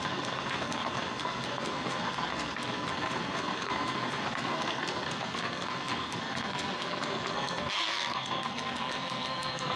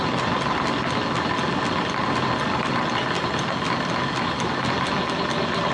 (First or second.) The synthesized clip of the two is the first